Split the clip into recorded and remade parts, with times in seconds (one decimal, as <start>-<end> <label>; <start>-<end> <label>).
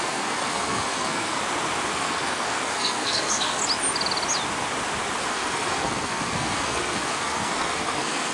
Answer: 0.0-1.4 remade; 1.4-1.9 recorded; 1.9-3.6 remade; 3.6-5.2 recorded; 5.2-8.3 remade